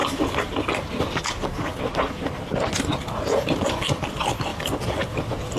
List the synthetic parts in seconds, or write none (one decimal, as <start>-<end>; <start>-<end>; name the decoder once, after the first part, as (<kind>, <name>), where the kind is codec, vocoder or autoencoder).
4.5-5.6 (vocoder, BigVGAN v2)